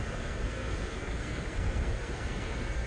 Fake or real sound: fake